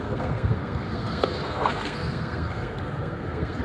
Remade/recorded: remade